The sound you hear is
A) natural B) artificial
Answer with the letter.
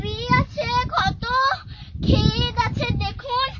A